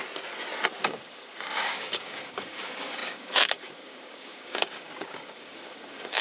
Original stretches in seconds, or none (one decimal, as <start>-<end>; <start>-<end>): 0.0-0.8